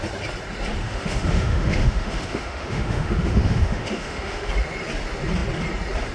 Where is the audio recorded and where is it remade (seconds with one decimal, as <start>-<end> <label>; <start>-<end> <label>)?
0.0-0.8 recorded; 0.8-4.5 remade; 4.5-6.1 recorded